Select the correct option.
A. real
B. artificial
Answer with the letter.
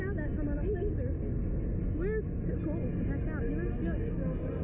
A